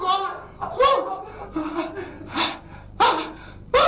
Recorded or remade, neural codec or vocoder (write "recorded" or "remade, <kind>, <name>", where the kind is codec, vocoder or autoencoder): recorded